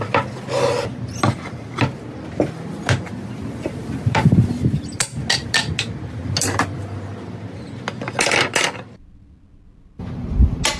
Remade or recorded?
recorded